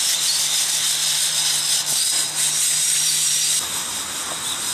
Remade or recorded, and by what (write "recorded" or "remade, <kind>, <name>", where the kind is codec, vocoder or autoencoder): recorded